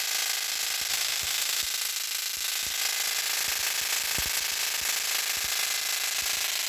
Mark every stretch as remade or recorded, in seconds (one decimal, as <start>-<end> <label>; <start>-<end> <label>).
0.0-0.9 recorded; 0.9-1.6 remade; 1.6-6.7 recorded